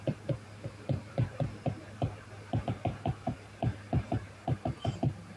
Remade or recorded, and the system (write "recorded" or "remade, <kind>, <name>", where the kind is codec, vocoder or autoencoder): remade, vocoder, BigVGAN v2